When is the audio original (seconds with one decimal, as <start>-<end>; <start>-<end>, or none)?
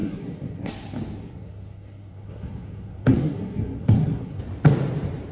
0.7-1.2; 4.4-5.3